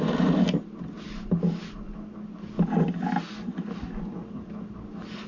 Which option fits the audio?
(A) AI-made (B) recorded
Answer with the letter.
B